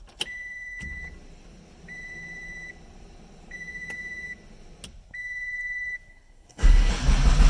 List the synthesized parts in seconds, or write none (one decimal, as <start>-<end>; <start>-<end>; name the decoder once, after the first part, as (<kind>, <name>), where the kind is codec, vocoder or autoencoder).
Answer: 6.1-6.9 (codec, SNAC)